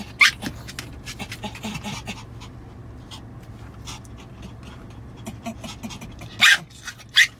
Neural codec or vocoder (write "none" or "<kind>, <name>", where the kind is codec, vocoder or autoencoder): none